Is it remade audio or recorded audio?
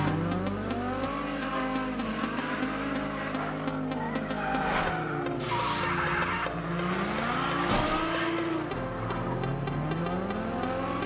recorded